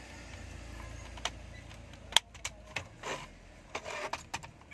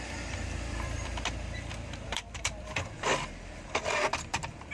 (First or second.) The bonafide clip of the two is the first